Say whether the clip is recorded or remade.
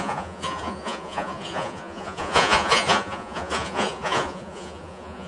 remade